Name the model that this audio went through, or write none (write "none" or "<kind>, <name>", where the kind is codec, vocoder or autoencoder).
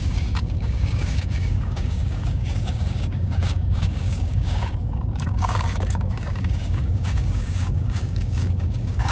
codec, DAC